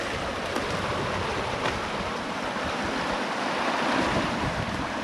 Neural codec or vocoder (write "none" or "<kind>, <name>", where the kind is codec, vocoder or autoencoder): none